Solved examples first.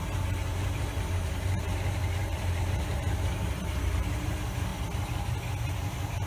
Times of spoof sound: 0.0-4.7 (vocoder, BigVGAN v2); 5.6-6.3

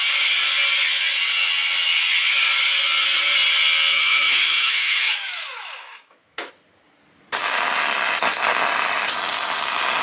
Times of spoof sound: 3.9-6.5 (autoencoder, DAC-VAE)

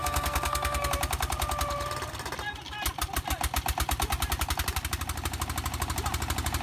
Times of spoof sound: 0.0-0.9 (codec, SNAC)

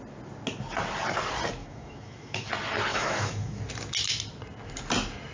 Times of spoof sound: 1.6-2.5 (autoencoder, DAC-VAE); 2.9-3.6

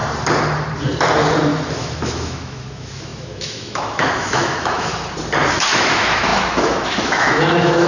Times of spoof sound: 1.7-4.9 (autoencoder, DAC-VAE); 5.5-7.9

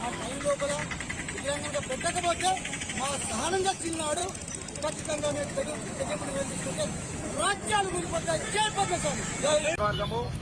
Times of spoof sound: 0.0-0.8 (autoencoder, DAC-VAE); 2.2-4.2; 4.9-10.4

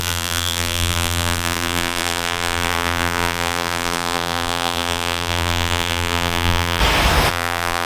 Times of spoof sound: 0.0-6.8 (vocoder, BigVGAN v2); 7.3-7.9

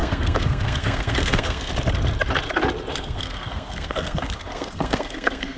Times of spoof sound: 0.0-1.7 (codec, SNAC); 2.9-5.6